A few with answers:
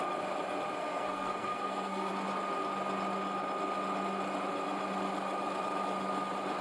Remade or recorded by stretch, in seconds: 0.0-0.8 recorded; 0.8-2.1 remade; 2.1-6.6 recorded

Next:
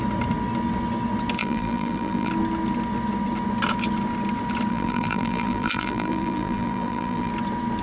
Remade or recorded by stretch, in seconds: 0.0-1.4 recorded; 1.4-2.3 remade; 2.3-4.7 recorded; 4.7-7.3 remade; 7.3-7.8 recorded

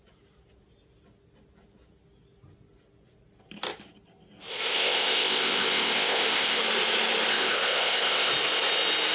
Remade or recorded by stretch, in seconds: 0.0-4.5 recorded; 4.5-6.6 remade; 6.6-7.3 recorded; 7.3-8.3 remade; 8.3-9.1 recorded

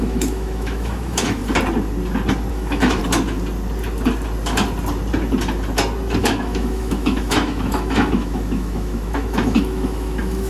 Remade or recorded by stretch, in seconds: 0.0-1.4 remade; 1.4-2.5 recorded; 2.5-3.0 remade; 3.0-6.2 recorded; 6.2-10.5 remade

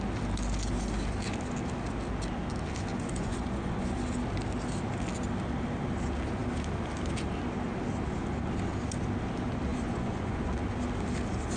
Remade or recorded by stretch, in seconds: 0.0-2.9 recorded; 2.9-3.9 remade; 3.9-9.7 recorded; 9.7-10.4 remade; 10.4-11.6 recorded

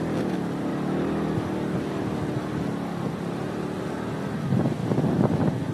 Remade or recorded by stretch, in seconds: 0.0-5.7 recorded

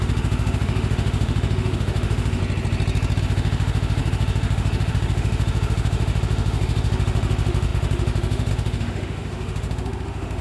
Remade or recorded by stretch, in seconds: 0.0-2.4 remade; 2.4-3.2 recorded; 3.2-10.4 remade